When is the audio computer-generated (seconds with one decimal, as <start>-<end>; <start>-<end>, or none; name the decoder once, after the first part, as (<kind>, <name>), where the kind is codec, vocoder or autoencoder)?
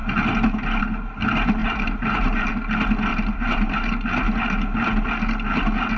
1.6-2.5 (vocoder, BigVGAN v2); 3.1-3.9